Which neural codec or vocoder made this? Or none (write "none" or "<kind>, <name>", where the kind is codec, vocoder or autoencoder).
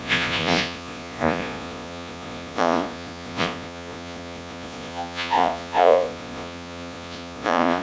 vocoder, Vocos